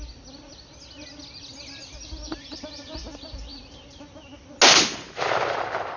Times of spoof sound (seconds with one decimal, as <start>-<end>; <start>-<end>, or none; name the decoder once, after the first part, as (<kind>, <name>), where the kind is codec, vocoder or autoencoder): none